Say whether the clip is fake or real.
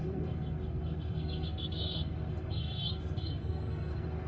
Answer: fake